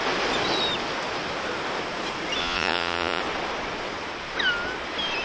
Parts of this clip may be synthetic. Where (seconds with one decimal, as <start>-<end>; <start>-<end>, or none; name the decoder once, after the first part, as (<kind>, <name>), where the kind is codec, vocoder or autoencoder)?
2.4-3.2 (vocoder, Vocos)